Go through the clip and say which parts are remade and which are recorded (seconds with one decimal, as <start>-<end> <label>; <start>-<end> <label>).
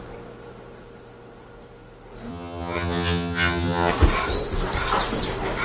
0.0-2.3 recorded; 2.3-3.9 remade; 3.9-5.6 recorded